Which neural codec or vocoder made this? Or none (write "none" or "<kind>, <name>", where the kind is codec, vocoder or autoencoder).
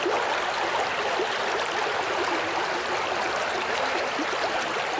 none